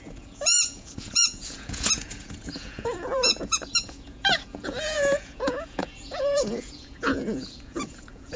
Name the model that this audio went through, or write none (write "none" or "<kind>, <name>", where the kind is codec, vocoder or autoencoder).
vocoder, Vocos